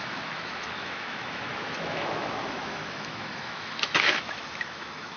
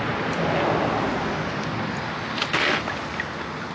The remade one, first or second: first